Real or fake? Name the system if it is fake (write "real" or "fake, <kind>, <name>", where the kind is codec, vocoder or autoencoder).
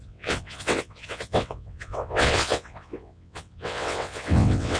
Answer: fake, vocoder, WaveNeXt